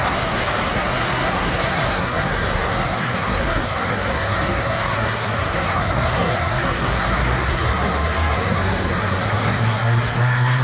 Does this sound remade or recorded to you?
remade